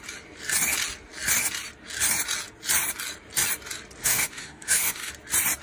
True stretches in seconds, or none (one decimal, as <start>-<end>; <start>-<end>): 0.0-4.0; 5.1-5.6